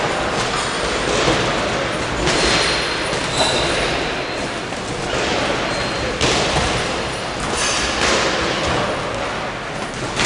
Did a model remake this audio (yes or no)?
no